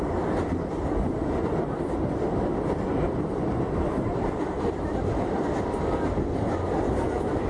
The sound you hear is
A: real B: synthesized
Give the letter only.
B